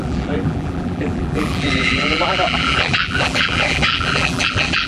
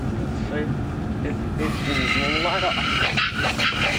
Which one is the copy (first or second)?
first